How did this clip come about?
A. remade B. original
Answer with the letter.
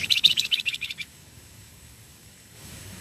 A